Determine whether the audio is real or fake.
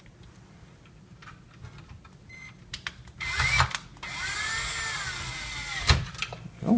real